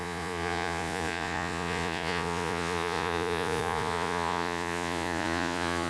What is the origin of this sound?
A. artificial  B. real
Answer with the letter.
A